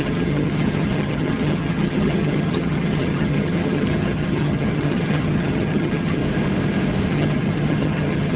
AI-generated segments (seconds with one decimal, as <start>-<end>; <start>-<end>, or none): 0.0-6.2; 7.1-8.4